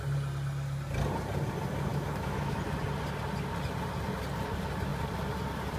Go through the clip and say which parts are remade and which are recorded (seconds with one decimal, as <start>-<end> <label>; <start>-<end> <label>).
0.0-1.9 recorded; 1.9-2.6 remade; 2.6-5.8 recorded